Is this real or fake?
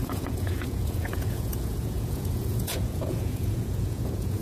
fake